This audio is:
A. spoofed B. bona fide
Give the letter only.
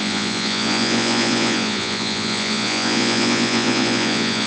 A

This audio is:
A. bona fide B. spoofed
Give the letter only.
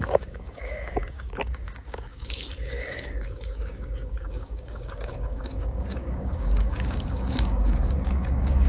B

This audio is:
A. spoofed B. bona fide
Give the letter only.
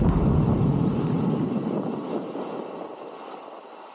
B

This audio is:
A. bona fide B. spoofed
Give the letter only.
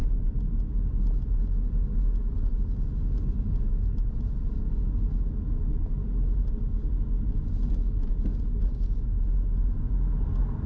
A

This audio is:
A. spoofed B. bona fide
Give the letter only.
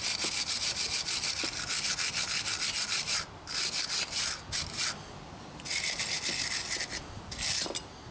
B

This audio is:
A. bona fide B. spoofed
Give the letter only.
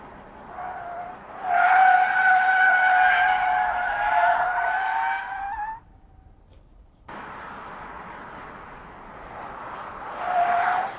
A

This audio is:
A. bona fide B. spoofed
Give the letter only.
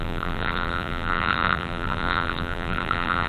B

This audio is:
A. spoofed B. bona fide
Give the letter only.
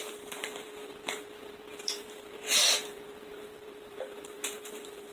A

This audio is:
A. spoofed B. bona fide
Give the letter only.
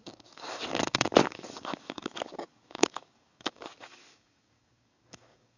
A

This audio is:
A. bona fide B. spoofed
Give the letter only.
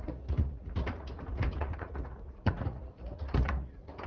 B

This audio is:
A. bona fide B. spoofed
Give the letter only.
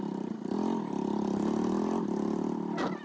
A